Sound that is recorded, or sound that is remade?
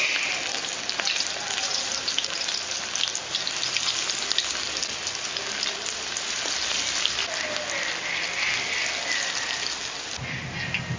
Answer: recorded